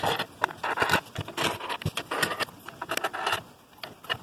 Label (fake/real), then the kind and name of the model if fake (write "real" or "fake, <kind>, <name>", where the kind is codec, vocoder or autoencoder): real